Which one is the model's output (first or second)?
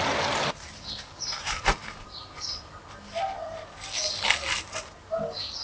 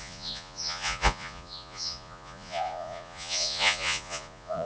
second